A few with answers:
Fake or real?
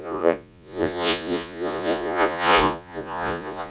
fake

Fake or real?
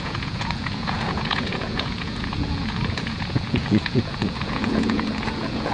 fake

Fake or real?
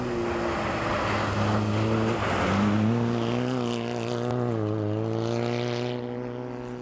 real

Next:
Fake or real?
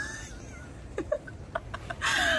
real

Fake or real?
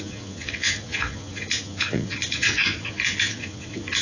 fake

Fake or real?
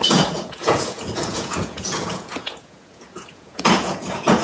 fake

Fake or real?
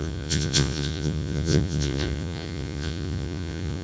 fake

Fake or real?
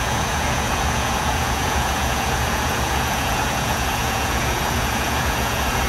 fake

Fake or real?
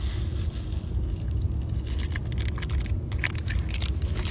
real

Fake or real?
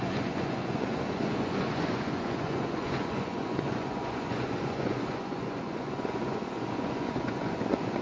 fake